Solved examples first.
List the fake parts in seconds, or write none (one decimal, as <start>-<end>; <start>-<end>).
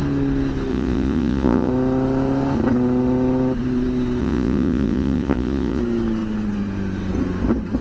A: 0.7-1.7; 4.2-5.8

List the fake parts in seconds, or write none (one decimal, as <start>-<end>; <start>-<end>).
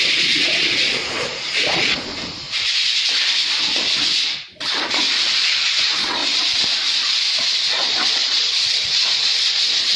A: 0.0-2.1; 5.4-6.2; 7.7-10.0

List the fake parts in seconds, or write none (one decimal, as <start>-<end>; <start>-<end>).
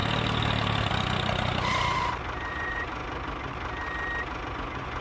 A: 2.5-3.0; 4.5-5.0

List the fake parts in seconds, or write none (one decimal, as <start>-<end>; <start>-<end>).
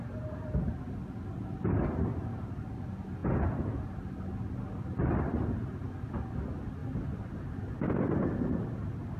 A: 3.2-3.8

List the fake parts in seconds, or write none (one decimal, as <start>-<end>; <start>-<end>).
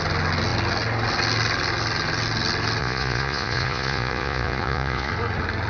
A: 2.8-5.1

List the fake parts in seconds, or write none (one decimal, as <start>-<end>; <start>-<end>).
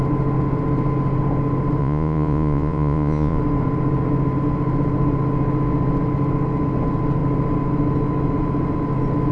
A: 1.8-3.4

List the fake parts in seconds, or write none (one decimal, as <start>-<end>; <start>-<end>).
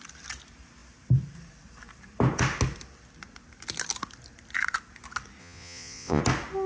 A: 5.4-6.2